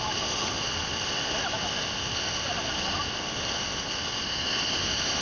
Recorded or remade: recorded